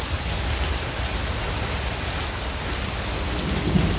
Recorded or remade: recorded